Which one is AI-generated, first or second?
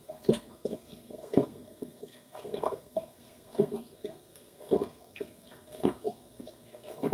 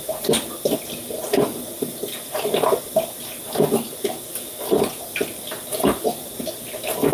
first